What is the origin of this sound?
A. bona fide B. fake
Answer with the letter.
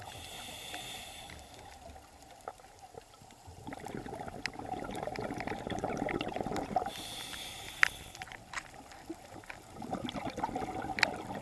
A